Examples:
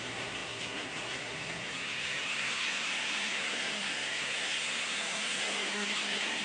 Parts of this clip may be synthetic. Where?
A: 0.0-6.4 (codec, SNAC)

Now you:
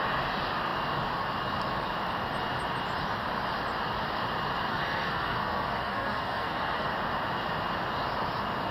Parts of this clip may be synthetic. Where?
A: 4.7-6.9 (codec, SNAC)

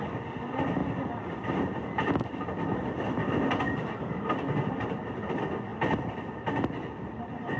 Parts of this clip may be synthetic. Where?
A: none

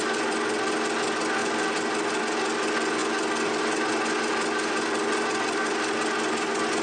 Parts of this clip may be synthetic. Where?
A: none

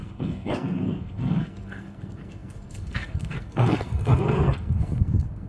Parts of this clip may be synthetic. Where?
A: 0.0-5.5 (codec, SNAC)